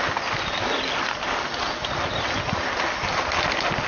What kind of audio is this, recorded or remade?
recorded